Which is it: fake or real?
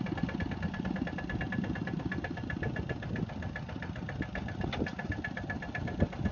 real